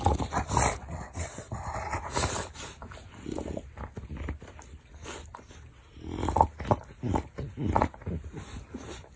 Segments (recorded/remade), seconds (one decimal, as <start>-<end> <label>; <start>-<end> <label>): 0.0-0.8 recorded; 0.8-1.4 remade; 1.4-9.2 recorded